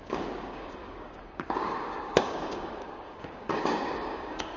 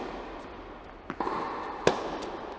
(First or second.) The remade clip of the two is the first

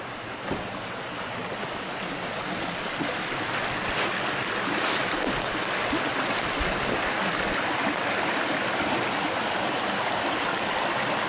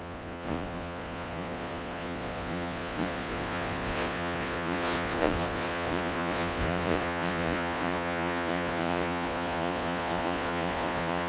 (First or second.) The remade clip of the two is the second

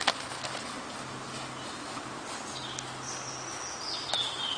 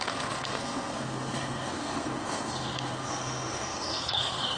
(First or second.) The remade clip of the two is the second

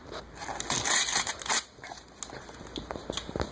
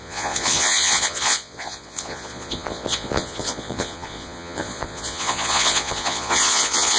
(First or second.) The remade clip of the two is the second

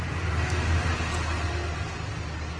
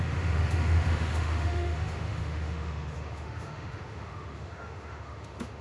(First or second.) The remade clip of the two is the second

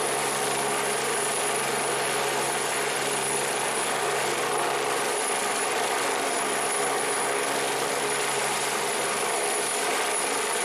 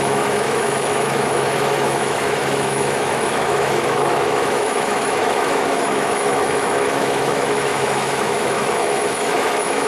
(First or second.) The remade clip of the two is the second